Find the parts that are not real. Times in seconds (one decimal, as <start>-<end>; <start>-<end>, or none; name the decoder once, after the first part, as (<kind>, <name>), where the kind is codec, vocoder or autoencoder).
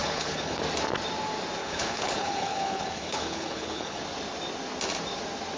0.0-0.6 (codec, HILCodec); 1.6-4.0